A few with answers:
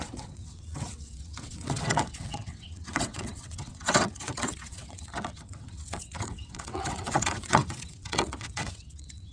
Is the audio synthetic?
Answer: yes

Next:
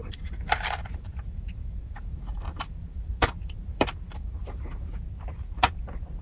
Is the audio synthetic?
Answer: yes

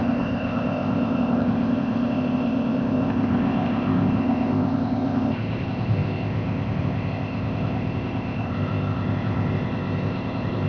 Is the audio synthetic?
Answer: yes